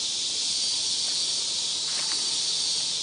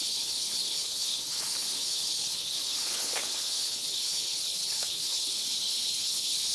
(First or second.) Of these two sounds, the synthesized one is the second